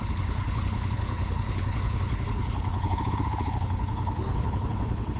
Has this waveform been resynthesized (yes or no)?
yes